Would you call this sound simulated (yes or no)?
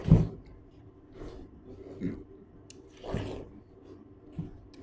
no